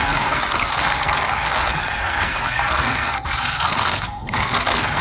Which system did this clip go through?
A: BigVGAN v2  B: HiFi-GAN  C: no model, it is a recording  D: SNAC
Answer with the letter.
D